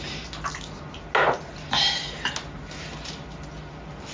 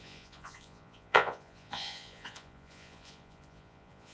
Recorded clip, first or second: first